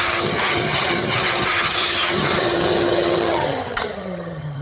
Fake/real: fake